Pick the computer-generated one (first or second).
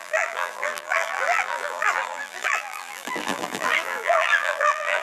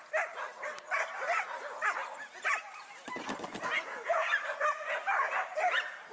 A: first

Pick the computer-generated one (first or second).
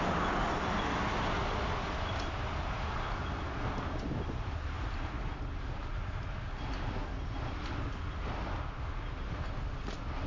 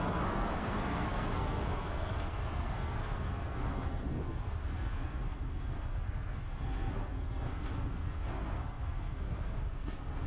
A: second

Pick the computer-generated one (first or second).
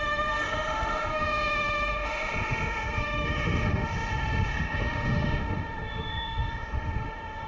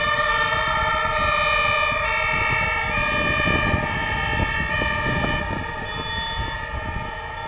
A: first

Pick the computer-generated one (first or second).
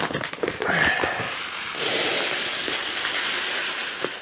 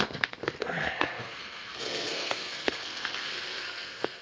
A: second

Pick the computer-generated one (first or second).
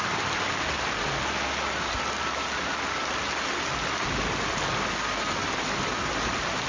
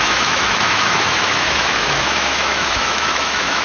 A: second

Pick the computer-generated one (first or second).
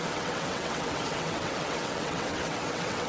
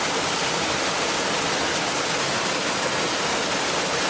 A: first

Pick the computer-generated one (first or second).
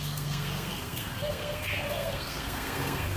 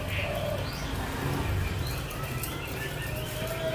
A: first